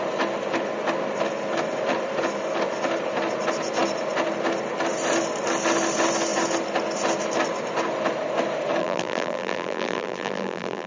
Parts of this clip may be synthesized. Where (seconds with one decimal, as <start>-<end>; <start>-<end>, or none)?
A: 8.8-10.9

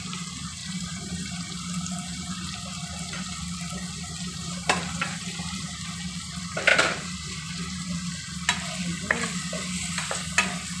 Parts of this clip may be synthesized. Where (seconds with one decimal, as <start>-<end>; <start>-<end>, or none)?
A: 0.6-1.3; 4.3-5.6; 6.7-7.8